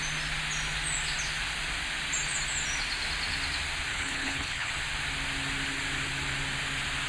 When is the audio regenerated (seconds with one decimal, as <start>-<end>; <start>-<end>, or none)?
3.9-4.7

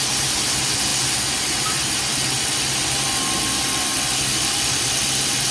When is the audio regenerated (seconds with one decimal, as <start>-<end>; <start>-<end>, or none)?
none

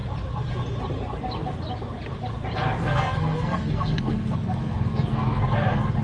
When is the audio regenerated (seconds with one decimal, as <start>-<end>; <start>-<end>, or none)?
2.8-5.4

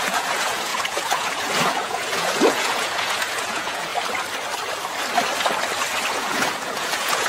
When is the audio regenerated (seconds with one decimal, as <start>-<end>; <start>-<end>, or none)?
0.0-3.9; 6.1-7.3

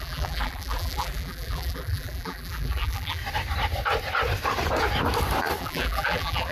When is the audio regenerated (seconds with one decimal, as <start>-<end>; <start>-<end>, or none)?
0.0-3.2; 5.6-6.5

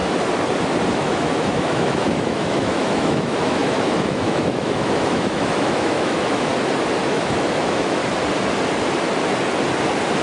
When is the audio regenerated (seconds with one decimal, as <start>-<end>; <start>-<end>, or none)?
0.9-6.5; 7.1-8.0

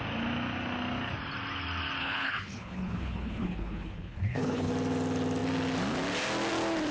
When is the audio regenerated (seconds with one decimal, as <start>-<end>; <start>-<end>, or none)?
2.0-4.7